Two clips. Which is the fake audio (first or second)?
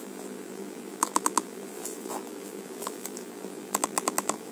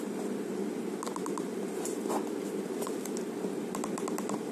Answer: first